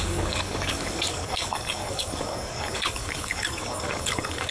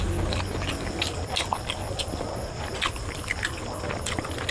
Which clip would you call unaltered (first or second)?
second